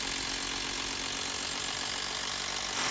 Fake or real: real